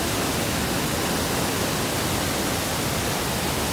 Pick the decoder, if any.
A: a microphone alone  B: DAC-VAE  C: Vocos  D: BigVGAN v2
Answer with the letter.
A